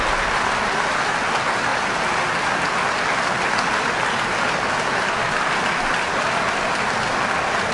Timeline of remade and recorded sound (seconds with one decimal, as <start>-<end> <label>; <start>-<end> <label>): 0.0-7.7 recorded